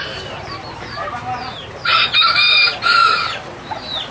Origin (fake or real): real